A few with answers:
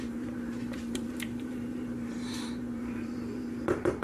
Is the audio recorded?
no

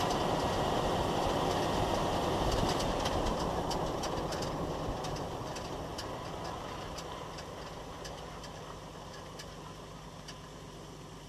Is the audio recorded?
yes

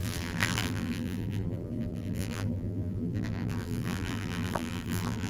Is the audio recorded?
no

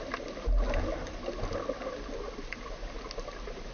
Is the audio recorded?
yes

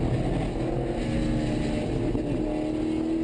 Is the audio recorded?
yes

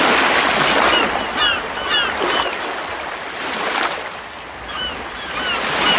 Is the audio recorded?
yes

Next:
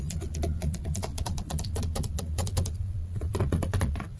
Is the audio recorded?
no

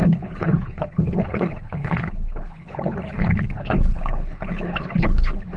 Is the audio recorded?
no